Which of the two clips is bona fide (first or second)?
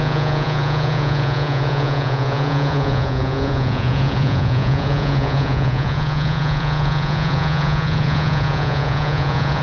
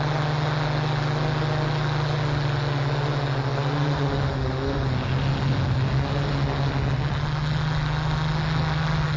second